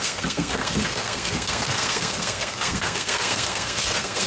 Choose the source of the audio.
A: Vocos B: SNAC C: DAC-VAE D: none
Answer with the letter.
B